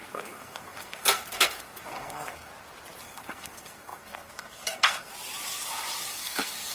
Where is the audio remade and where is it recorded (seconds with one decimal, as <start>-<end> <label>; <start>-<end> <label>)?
0.0-2.5 remade; 2.5-3.0 recorded; 3.0-5.1 remade; 5.1-6.1 recorded; 6.1-6.7 remade